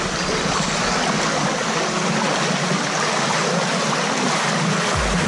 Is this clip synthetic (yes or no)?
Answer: no